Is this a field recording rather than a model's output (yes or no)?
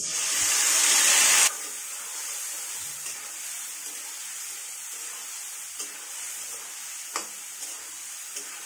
yes